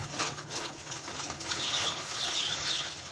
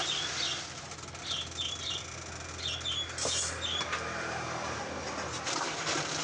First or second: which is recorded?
second